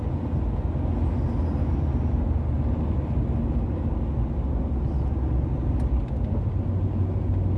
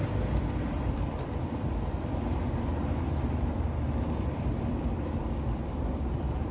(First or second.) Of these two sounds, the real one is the first